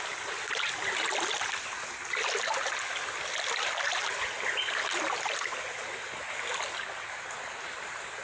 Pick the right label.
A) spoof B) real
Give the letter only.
B